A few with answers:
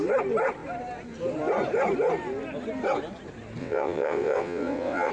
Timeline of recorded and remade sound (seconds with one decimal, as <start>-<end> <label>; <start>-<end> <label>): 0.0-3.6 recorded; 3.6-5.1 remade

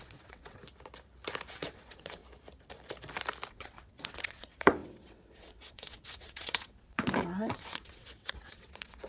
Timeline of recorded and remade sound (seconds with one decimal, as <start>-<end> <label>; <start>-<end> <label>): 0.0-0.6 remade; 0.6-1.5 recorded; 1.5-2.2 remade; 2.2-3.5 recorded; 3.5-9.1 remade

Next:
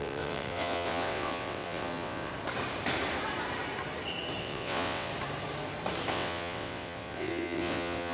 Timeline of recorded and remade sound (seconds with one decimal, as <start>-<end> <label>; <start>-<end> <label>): 0.0-2.3 remade; 2.3-4.4 recorded; 4.4-5.1 remade; 5.1-6.1 recorded; 6.1-8.1 remade

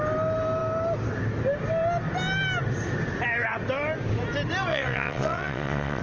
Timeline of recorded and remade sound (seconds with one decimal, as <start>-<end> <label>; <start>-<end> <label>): 0.0-4.7 recorded; 4.7-6.0 remade

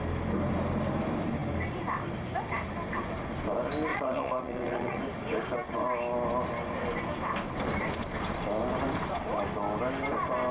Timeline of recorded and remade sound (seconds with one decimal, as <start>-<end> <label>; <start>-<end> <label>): 0.0-3.9 recorded; 3.9-5.0 remade; 5.0-10.5 recorded

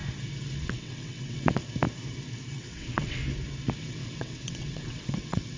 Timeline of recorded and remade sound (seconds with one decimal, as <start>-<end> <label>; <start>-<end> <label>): 0.0-0.6 recorded; 0.6-1.6 remade; 1.6-2.6 recorded; 2.6-3.2 remade; 3.2-3.8 recorded; 3.8-5.6 remade